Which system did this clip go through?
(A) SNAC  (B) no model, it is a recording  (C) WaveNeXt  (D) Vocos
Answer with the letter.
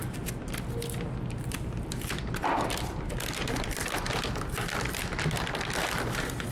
B